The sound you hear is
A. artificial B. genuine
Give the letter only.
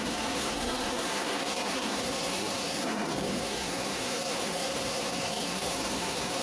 A